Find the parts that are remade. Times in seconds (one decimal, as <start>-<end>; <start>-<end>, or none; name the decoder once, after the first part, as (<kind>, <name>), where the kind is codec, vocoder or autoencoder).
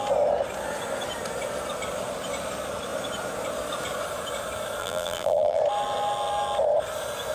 4.8-5.6 (vocoder, BigVGAN v2)